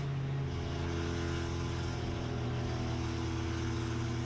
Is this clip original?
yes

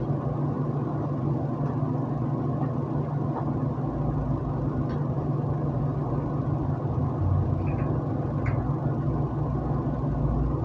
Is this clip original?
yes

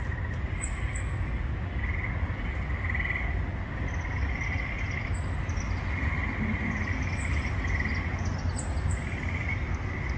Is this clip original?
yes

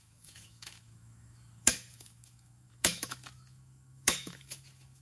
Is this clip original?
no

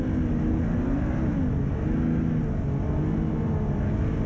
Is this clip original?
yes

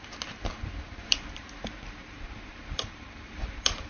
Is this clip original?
no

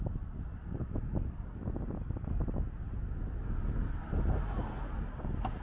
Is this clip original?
yes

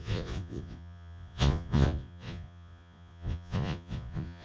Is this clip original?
no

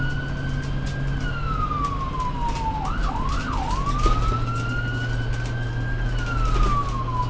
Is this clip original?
yes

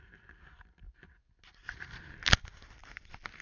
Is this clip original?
yes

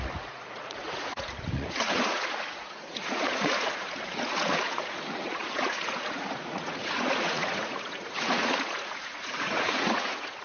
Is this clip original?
no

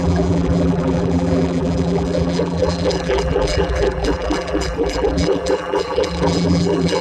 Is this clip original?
no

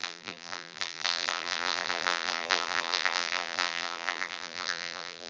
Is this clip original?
no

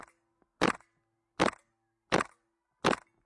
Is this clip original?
yes